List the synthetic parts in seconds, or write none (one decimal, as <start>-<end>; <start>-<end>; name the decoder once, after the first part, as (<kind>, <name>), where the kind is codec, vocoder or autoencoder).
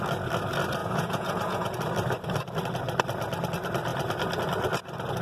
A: 0.8-1.8 (vocoder, Vocos)